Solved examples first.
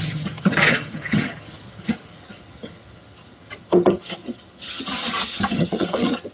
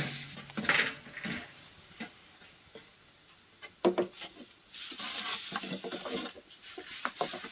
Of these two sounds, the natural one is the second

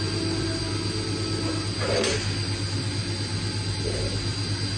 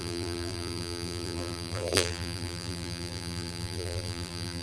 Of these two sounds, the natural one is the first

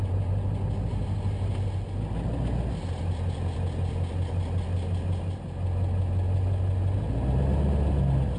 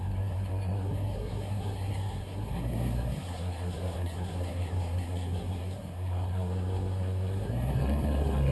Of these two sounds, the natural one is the first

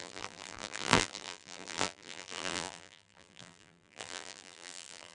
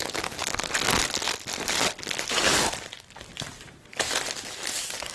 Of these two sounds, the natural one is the second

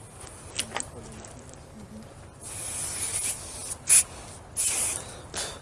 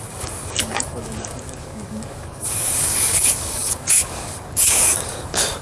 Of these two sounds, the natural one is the first